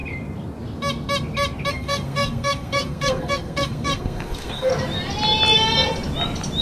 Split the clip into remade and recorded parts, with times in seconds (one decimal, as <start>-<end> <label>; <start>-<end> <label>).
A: 0.0-1.7 recorded; 1.7-4.7 remade; 4.7-6.6 recorded